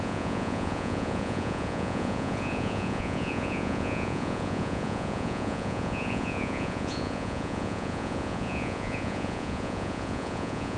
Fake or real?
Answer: fake